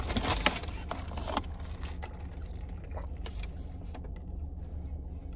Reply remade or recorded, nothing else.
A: recorded